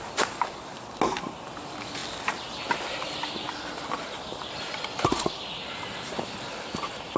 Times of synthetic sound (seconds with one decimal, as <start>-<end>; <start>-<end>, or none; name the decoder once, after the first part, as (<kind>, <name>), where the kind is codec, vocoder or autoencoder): none